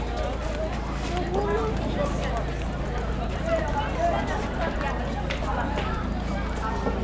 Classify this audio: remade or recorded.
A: recorded